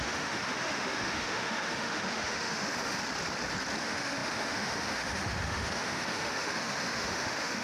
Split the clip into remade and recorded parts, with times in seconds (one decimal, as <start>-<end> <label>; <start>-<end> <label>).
0.0-3.0 remade; 3.0-3.8 recorded; 3.8-7.6 remade